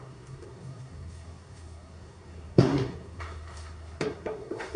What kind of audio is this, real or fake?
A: fake